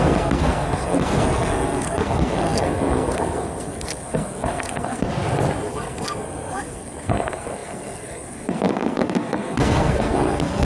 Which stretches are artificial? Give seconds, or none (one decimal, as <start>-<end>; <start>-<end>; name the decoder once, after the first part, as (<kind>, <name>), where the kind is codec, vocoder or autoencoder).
0.0-5.1 (codec, SNAC); 5.7-10.6